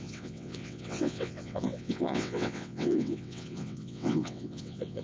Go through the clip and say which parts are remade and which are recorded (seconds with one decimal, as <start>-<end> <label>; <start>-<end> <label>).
0.0-5.0 remade